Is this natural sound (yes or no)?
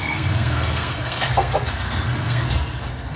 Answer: no